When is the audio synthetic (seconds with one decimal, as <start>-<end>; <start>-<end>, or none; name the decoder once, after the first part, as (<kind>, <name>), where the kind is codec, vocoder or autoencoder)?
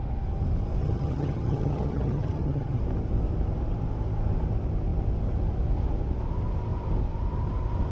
0.8-2.8 (vocoder, HiFi-GAN)